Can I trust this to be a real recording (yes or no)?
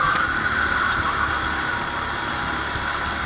yes